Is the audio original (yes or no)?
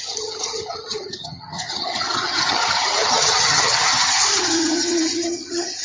no